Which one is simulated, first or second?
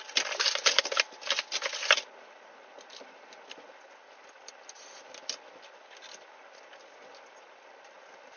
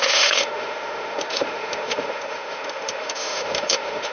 second